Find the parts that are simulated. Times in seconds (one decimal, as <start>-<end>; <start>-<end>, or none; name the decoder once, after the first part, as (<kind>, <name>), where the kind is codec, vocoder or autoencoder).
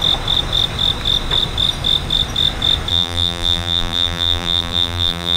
2.9-5.4 (vocoder, BigVGAN v2)